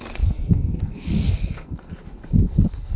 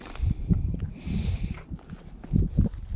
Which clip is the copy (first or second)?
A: first